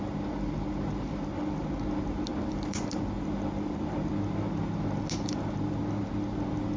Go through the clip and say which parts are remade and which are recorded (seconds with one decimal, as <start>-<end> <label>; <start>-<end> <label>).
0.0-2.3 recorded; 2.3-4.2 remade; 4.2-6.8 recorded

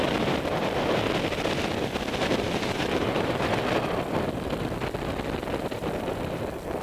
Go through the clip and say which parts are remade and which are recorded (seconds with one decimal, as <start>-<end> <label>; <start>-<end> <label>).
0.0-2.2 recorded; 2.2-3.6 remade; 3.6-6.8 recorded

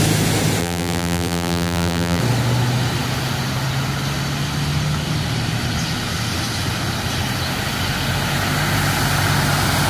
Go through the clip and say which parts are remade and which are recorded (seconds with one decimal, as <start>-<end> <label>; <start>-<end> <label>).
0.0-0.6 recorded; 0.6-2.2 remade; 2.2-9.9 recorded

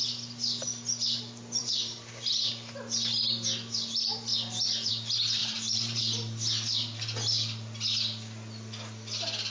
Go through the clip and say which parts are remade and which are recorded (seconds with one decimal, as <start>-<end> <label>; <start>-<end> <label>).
0.0-1.6 recorded; 1.6-2.5 remade; 2.5-5.4 recorded; 5.4-6.0 remade; 6.0-9.5 recorded

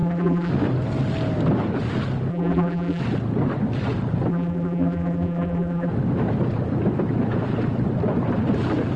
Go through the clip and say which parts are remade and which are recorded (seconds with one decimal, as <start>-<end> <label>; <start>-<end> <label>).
0.0-0.5 remade; 0.5-2.3 recorded; 2.3-3.0 remade; 3.0-4.3 recorded; 4.3-5.9 remade; 5.9-9.0 recorded